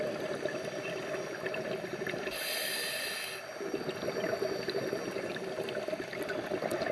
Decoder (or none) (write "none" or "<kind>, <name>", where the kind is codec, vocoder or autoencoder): none